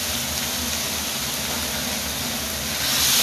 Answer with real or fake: real